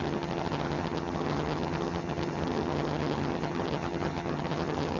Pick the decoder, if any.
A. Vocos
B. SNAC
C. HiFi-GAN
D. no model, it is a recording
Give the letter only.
C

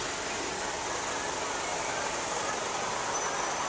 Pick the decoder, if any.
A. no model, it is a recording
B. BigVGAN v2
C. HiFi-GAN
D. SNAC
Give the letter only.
A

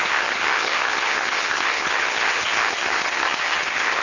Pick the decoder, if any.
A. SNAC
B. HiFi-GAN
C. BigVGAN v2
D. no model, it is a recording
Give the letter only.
B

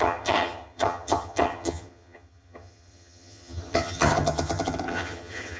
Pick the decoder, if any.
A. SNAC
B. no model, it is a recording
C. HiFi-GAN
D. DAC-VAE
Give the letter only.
C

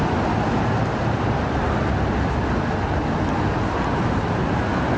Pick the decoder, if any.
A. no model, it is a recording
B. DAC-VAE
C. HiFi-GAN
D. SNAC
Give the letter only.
A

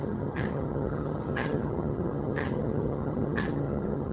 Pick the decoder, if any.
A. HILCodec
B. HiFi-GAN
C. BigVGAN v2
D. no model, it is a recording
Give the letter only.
B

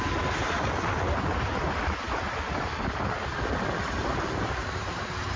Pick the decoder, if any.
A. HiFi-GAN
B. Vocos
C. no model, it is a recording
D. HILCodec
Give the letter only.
C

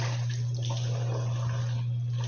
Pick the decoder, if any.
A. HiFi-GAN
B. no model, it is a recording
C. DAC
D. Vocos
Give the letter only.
B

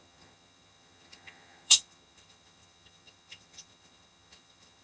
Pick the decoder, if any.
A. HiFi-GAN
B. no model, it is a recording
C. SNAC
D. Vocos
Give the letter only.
A